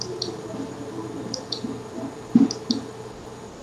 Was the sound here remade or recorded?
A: recorded